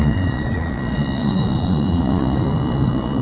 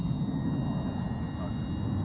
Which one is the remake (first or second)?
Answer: first